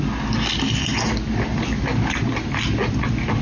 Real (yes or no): yes